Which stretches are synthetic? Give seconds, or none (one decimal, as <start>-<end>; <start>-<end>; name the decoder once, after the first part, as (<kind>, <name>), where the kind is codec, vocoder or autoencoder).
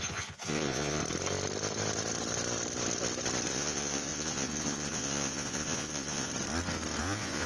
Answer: 0.0-1.0 (vocoder, Vocos); 3.5-6.3; 7.0-7.5